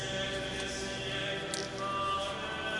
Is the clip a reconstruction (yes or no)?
no